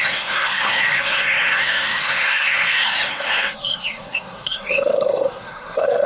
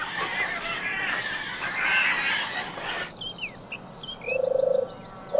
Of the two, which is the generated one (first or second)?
first